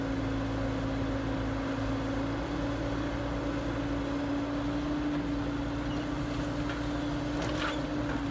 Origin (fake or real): real